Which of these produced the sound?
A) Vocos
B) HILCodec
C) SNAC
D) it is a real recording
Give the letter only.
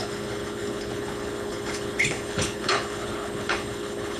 B